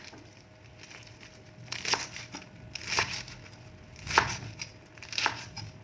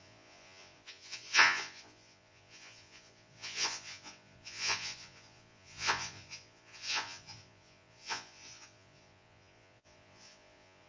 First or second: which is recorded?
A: first